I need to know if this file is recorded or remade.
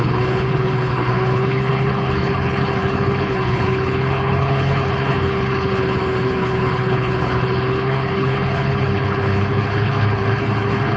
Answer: remade